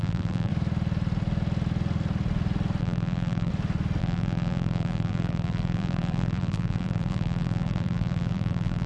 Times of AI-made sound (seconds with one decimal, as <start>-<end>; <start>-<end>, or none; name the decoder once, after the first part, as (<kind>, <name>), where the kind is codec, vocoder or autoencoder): 0.0-0.5 (vocoder, BigVGAN v2); 2.8-3.5; 4.0-8.9